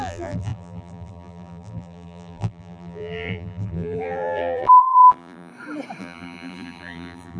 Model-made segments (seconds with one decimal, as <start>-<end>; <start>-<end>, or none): 0.0-5.5; 6.0-7.4